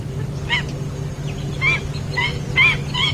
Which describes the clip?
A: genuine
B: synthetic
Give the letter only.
A